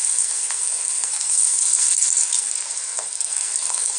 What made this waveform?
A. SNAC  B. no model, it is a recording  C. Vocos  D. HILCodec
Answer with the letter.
A